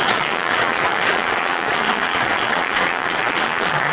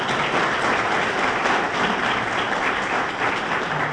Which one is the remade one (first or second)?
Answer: first